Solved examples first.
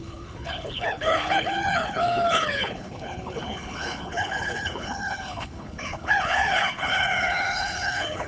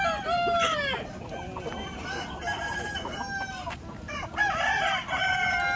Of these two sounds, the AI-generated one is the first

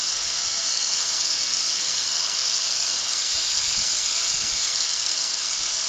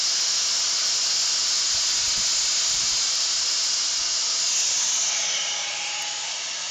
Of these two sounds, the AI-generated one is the first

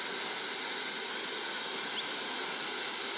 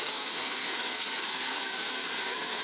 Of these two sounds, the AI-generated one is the second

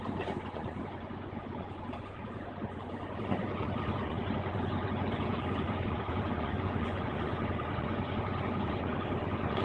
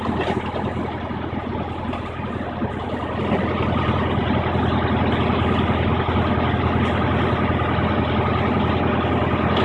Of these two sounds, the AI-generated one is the first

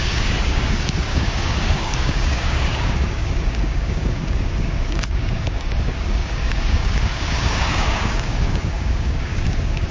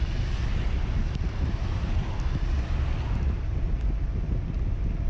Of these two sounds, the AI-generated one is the first